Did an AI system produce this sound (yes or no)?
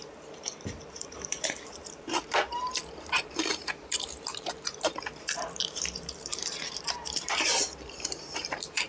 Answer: yes